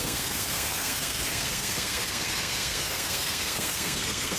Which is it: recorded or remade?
remade